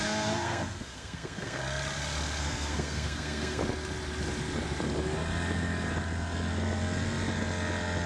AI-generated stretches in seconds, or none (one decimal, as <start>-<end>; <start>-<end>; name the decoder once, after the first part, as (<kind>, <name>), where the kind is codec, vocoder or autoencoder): 0.0-1.6 (codec, SNAC); 2.4-3.6